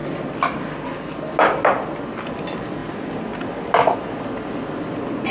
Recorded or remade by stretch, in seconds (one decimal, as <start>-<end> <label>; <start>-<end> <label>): 0.0-5.3 recorded